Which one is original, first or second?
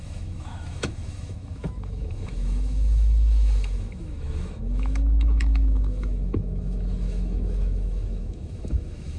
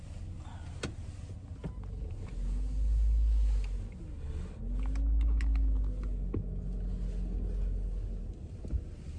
second